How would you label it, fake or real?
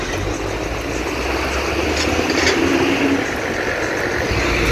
real